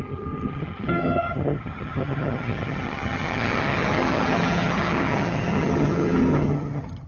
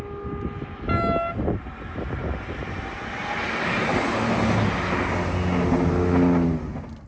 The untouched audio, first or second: second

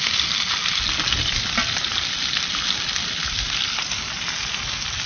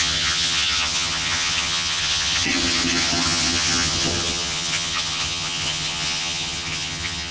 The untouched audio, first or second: first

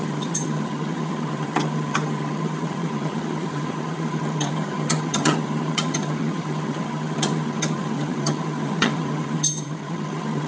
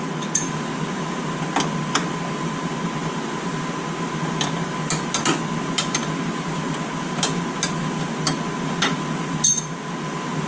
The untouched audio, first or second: second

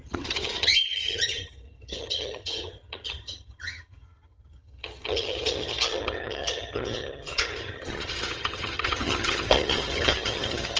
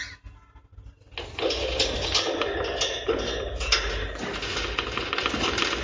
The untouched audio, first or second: second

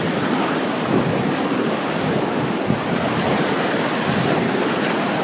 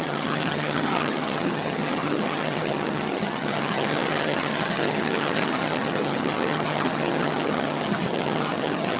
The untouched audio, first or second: first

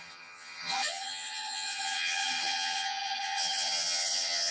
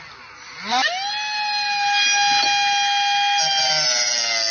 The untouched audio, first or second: second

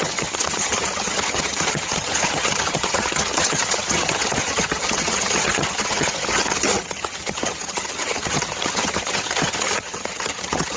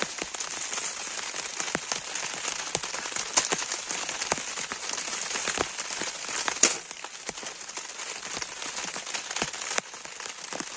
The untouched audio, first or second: second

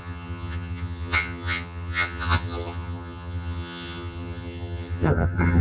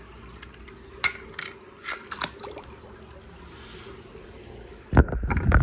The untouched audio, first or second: second